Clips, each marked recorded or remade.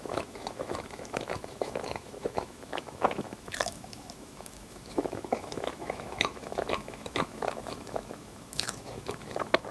remade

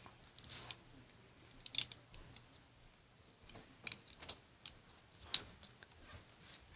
recorded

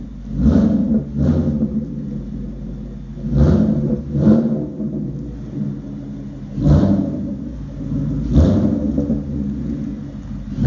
recorded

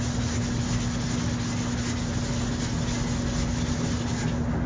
recorded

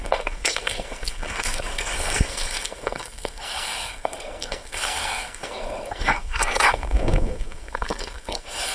remade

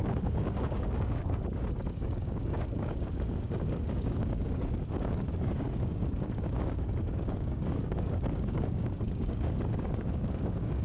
remade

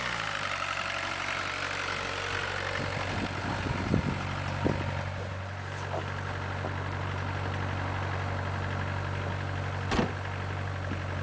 recorded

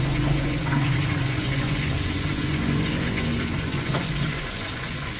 remade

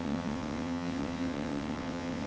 remade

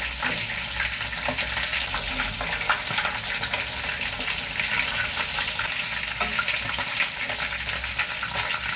recorded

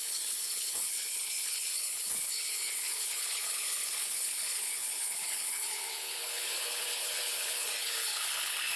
remade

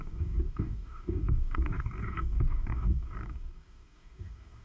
remade